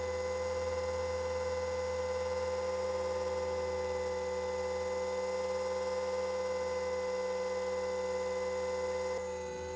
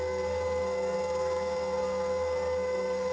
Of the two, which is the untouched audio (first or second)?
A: first